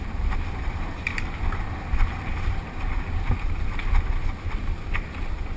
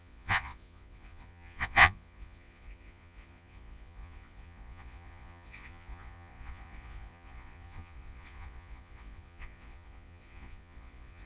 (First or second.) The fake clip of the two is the second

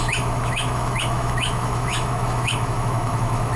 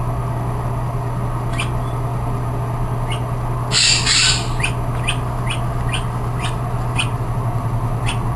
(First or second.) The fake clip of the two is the first